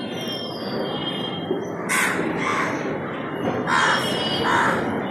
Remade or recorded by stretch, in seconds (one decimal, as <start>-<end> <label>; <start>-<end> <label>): 0.0-1.0 recorded; 1.0-1.9 remade; 1.9-5.1 recorded

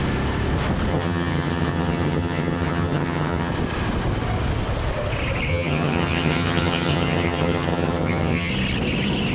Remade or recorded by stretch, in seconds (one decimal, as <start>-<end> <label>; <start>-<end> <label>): 0.0-0.9 recorded; 0.9-3.5 remade; 3.5-5.5 recorded; 5.5-8.5 remade; 8.5-9.3 recorded

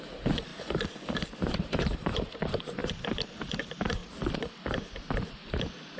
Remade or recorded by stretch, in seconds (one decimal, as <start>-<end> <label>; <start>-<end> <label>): 0.0-0.5 remade; 0.5-1.4 recorded; 1.4-4.0 remade; 4.0-6.0 recorded

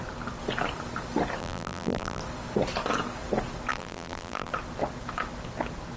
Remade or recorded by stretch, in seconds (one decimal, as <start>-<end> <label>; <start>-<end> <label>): 0.0-1.4 recorded; 1.4-2.2 remade; 2.2-3.7 recorded; 3.7-4.5 remade; 4.5-6.0 recorded

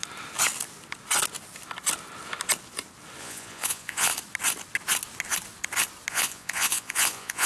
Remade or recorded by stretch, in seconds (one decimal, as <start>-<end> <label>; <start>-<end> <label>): 0.0-3.2 recorded; 3.2-4.1 remade; 4.1-6.1 recorded; 6.1-7.5 remade

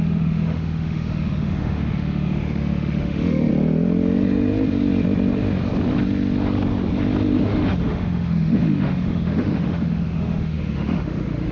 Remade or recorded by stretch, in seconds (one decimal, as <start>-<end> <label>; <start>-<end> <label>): 0.0-3.5 remade; 3.5-7.4 recorded; 7.4-11.5 remade

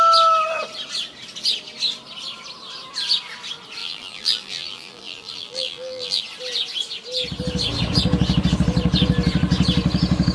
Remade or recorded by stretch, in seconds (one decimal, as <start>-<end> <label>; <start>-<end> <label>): 0.0-3.8 recorded; 3.8-6.2 remade; 6.2-10.3 recorded